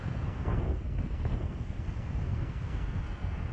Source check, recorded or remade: remade